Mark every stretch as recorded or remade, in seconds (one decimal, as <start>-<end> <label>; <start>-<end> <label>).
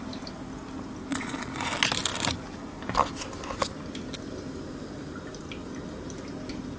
0.0-1.1 recorded; 1.1-1.7 remade; 1.7-6.8 recorded